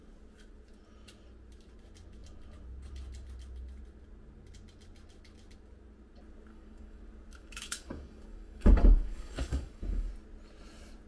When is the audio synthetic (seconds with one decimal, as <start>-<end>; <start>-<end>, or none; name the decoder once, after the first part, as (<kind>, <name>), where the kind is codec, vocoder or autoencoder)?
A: 6.5-7.0 (codec, DAC); 7.4-10.1